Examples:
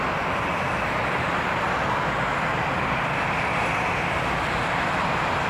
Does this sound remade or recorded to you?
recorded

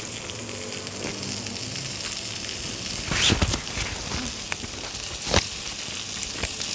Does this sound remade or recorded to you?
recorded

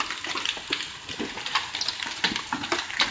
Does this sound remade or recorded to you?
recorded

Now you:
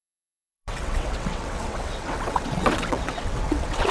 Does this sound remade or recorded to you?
remade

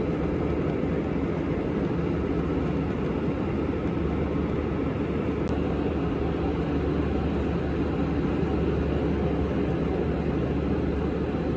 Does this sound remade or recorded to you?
recorded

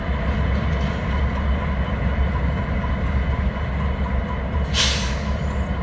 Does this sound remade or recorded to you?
recorded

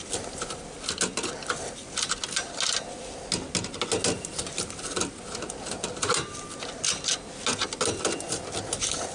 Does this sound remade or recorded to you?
recorded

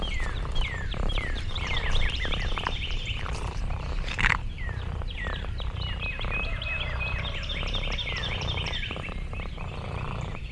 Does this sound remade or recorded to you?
remade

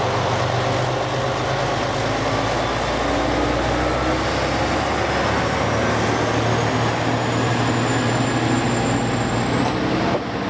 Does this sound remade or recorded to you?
recorded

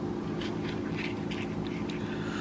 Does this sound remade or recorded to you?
recorded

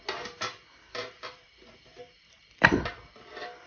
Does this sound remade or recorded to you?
recorded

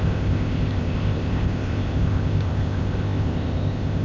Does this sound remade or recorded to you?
remade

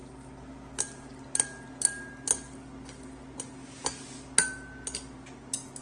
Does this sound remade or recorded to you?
recorded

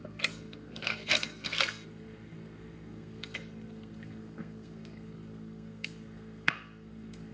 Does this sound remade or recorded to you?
remade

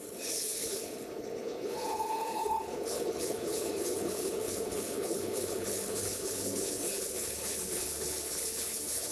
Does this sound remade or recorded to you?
remade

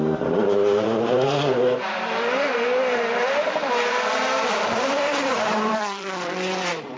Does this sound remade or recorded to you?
remade